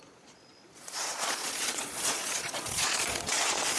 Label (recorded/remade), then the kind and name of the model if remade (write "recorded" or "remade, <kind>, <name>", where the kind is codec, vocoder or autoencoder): remade, vocoder, Vocos